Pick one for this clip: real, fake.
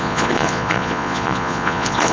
fake